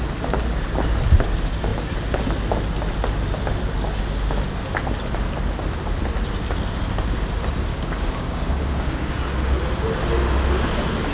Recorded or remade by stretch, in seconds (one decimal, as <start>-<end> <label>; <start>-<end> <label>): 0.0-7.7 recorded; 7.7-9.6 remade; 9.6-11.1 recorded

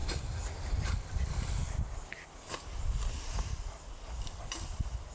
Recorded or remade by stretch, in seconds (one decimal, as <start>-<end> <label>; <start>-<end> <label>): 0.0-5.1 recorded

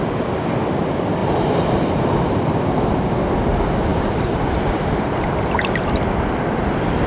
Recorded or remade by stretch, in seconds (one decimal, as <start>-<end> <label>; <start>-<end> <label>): 0.0-3.9 recorded; 3.9-5.8 remade; 5.8-7.1 recorded

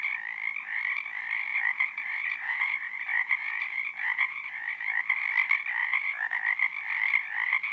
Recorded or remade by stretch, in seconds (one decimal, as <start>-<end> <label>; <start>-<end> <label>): 0.0-1.5 recorded; 1.5-5.0 remade; 5.0-5.8 recorded; 5.8-6.3 remade; 6.3-7.7 recorded

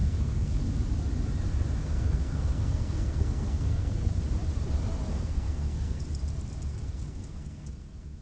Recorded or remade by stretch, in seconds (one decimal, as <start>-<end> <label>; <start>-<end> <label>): 0.0-0.6 remade; 0.6-1.8 recorded; 1.8-4.2 remade; 4.2-5.1 recorded; 5.1-6.0 remade; 6.0-6.7 recorded; 6.7-8.2 remade